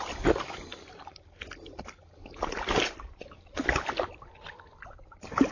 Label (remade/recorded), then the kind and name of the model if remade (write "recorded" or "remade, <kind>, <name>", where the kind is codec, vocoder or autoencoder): recorded